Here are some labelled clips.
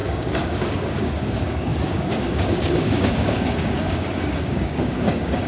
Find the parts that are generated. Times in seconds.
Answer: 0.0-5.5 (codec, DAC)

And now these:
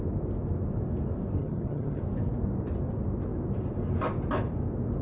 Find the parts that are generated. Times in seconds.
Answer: 1.4-2.0 (vocoder, HiFi-GAN)

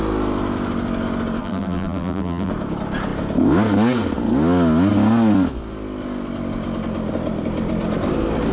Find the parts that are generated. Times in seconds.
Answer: 1.4-2.5 (vocoder, BigVGAN v2)

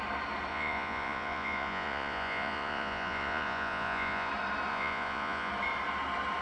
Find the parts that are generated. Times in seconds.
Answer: 0.5-4.3 (vocoder, Vocos); 4.7-5.5

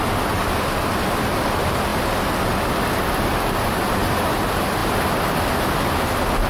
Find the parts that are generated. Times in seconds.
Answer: none

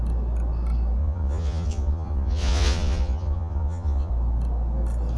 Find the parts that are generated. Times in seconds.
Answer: 1.0-4.1 (vocoder, Vocos)

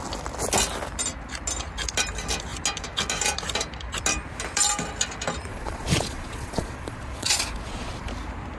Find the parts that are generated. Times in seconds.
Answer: 5.5-8.1 (vocoder, Vocos)